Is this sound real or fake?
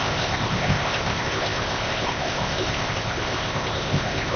fake